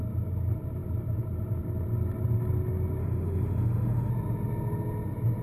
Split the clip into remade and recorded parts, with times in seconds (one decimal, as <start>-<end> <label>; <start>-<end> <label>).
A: 0.0-3.0 recorded; 3.0-4.1 remade; 4.1-5.4 recorded

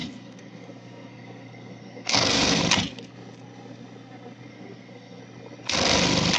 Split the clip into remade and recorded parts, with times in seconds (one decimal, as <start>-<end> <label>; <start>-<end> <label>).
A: 0.0-2.6 remade; 2.6-4.5 recorded; 4.5-5.2 remade; 5.2-6.4 recorded

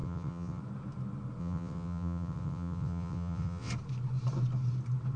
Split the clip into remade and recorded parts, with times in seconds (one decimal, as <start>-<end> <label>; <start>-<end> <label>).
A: 0.0-0.6 remade; 0.6-1.4 recorded; 1.4-3.7 remade; 3.7-5.2 recorded

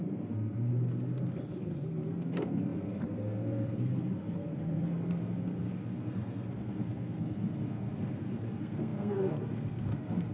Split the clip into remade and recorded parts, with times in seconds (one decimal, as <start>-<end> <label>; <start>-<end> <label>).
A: 0.0-0.7 remade; 0.7-1.6 recorded; 1.6-10.3 remade

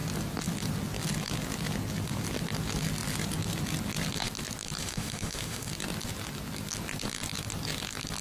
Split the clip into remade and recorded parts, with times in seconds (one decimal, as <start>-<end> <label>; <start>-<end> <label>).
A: 0.0-4.8 recorded; 4.8-5.7 remade; 5.7-8.2 recorded

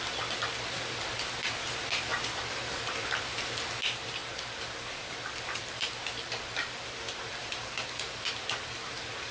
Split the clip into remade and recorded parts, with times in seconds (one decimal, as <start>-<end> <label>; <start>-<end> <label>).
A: 0.0-2.1 recorded; 2.1-3.2 remade; 3.2-4.2 recorded; 4.2-9.3 remade

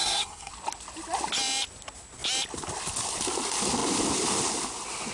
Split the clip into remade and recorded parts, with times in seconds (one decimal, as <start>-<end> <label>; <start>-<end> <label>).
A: 0.0-0.5 remade; 0.5-5.1 recorded

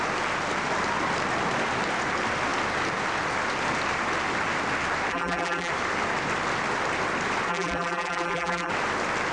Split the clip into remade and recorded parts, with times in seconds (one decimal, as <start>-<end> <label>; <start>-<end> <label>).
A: 0.0-5.1 recorded; 5.1-5.7 remade; 5.7-7.5 recorded; 7.5-8.7 remade; 8.7-9.3 recorded